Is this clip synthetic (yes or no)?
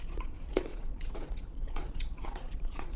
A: yes